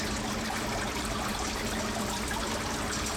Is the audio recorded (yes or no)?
yes